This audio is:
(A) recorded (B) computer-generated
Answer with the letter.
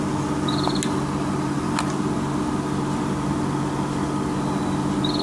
A